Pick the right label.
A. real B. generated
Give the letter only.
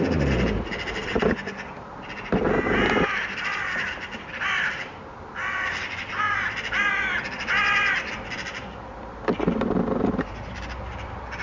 A